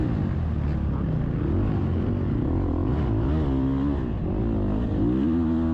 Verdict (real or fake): real